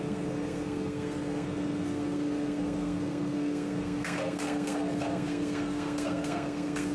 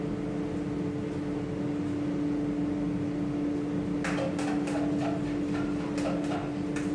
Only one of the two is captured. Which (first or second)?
second